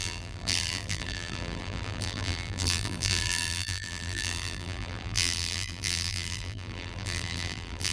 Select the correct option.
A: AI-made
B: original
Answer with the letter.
A